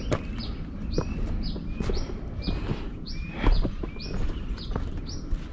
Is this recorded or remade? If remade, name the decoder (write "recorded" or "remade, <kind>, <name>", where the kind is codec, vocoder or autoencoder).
recorded